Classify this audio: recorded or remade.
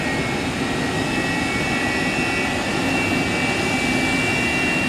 recorded